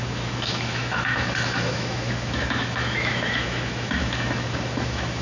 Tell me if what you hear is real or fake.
fake